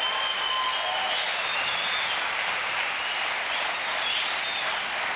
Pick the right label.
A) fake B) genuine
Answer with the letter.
B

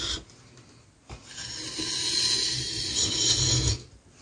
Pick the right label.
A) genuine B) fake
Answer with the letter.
A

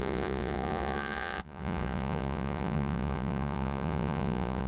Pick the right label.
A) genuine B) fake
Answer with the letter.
B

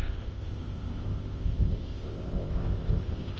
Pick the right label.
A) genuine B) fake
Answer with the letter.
B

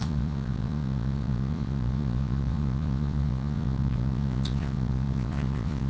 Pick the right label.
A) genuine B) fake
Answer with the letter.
B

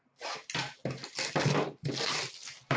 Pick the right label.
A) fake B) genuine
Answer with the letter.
B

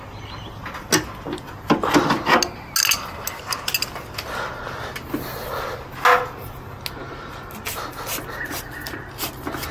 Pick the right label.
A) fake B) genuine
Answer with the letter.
B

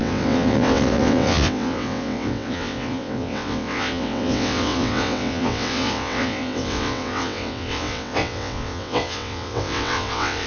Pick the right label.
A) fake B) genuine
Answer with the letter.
A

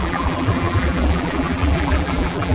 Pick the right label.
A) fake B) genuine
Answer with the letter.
A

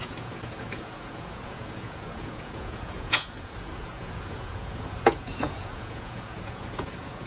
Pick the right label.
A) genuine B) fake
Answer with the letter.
B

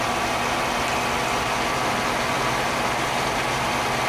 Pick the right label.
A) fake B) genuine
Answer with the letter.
B